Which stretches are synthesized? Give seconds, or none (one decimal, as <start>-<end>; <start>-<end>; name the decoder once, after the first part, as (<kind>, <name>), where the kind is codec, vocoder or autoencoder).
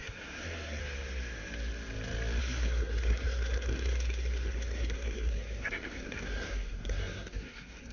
0.0-0.8 (codec, SNAC); 2.4-7.9